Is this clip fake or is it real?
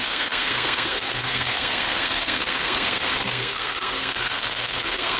fake